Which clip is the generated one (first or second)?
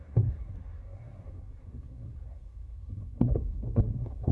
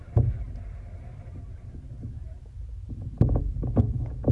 first